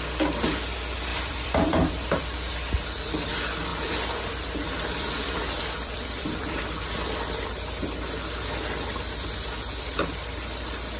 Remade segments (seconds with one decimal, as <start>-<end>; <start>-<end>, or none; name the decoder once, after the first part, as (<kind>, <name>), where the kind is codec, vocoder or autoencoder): 1.1-2.2 (vocoder, BigVGAN v2); 3.7-6.6